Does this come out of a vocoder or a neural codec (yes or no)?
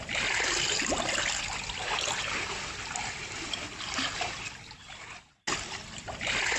no